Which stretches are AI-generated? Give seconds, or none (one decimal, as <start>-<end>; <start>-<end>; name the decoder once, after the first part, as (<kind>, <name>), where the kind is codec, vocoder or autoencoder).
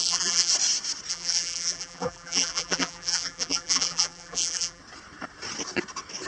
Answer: 0.0-0.5 (vocoder, BigVGAN v2); 1.1-4.8